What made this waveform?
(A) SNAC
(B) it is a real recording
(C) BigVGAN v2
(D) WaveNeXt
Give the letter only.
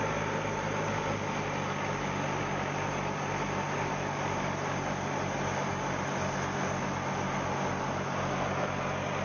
B